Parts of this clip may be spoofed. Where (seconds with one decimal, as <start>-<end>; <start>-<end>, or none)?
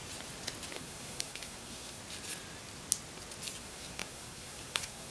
0.7-2.0; 3.6-5.1